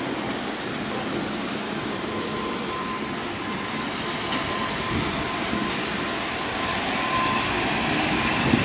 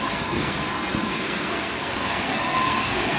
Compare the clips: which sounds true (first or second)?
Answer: first